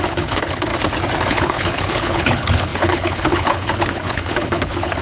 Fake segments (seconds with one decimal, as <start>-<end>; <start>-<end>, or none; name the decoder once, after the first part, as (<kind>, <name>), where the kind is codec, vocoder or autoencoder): 0.0-0.7 (codec, HILCodec); 1.3-5.0